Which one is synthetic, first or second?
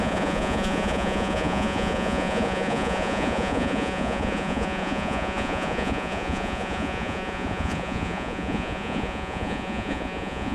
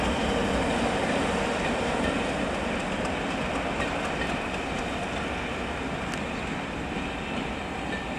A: first